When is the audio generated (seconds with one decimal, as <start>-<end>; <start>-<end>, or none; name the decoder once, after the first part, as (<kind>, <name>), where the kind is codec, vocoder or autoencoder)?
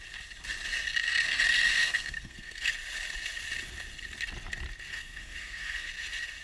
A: 1.7-2.7 (codec, SNAC); 4.9-5.9